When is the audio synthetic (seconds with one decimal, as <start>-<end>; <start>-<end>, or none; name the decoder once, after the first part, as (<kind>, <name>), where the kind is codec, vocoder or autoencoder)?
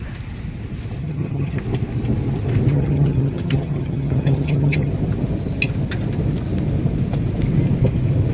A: 1.0-1.6 (vocoder, HiFi-GAN); 2.7-4.9